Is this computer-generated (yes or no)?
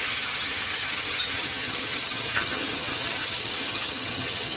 yes